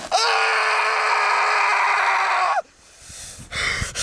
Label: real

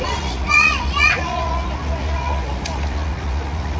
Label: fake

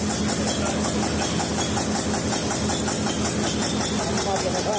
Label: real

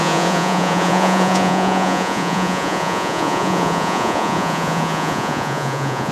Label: fake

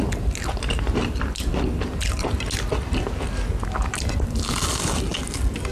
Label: real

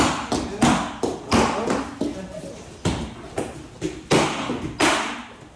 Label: real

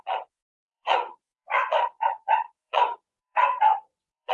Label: fake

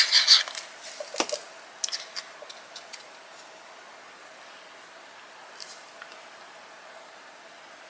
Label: real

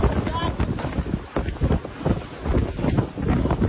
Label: real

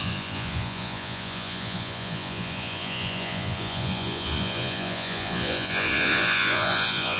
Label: fake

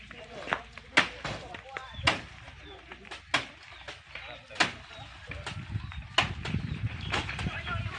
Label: real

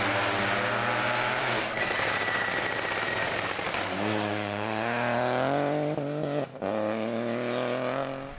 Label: real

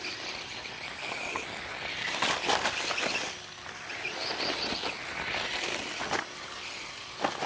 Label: real